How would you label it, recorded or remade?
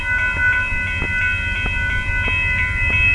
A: recorded